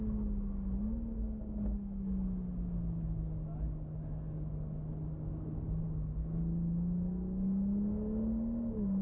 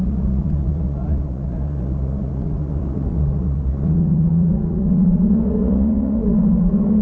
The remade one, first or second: second